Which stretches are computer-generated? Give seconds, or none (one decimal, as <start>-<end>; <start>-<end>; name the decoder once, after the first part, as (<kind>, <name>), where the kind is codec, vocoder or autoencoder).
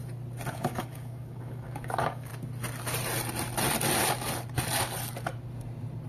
0.5-2.3 (codec, DAC)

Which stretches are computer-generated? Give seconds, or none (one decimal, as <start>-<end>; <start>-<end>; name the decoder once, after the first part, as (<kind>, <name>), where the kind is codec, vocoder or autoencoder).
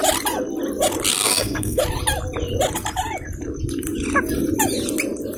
1.1-1.8 (codec, SNAC)